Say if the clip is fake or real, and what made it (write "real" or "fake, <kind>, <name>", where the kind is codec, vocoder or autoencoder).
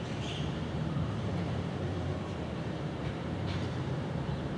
fake, vocoder, BigVGAN v2